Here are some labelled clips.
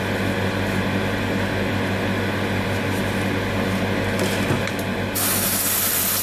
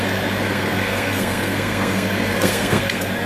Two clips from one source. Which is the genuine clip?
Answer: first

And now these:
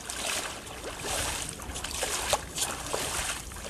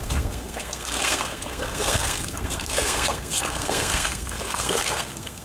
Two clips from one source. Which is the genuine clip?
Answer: first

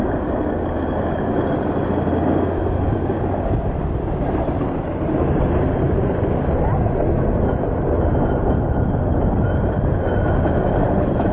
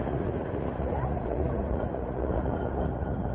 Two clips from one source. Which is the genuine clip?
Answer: first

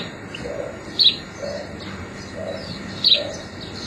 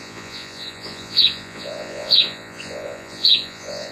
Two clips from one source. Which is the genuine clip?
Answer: first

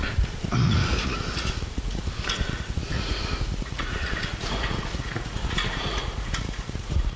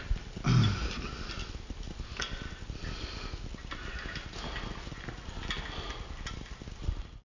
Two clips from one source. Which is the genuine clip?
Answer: second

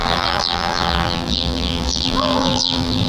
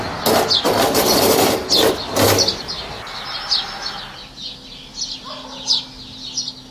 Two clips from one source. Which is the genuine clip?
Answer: second